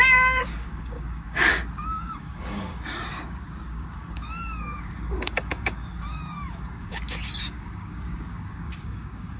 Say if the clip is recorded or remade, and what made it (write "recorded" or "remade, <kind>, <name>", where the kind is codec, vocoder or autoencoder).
remade, codec, DAC